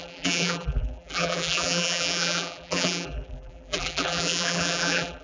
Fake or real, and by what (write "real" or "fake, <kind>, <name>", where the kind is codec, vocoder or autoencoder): fake, vocoder, BigVGAN v2